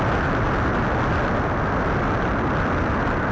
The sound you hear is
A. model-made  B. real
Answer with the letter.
B